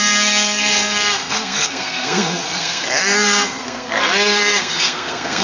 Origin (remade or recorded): remade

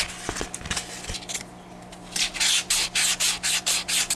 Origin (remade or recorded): recorded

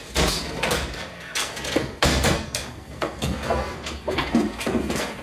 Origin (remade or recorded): remade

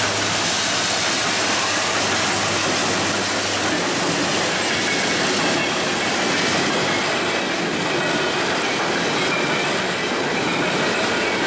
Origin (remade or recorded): recorded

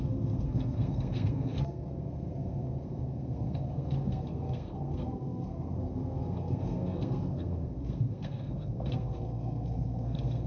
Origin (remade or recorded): remade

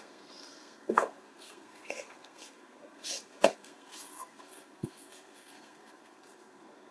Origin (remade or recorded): remade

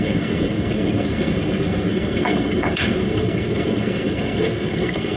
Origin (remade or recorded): remade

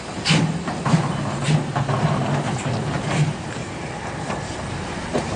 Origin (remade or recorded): recorded